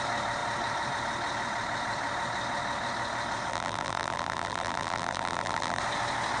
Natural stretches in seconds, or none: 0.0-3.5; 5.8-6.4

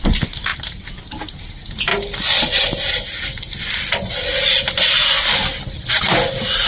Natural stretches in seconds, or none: 0.0-6.7

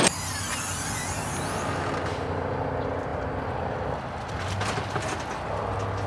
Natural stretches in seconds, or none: 0.0-6.1

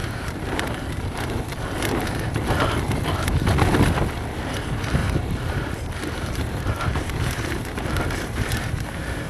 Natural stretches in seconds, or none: 1.4-5.0